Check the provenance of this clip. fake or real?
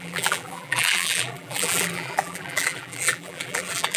fake